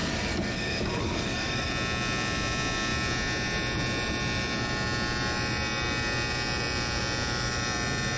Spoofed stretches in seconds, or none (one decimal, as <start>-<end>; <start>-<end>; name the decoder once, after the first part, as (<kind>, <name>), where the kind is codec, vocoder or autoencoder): 0.0-1.7 (codec, DAC)